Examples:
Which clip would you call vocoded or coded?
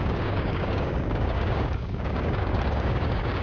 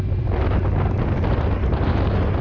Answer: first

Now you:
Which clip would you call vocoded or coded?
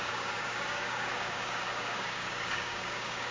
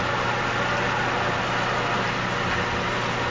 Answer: first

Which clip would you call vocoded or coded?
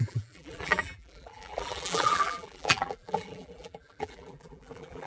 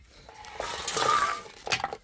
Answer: first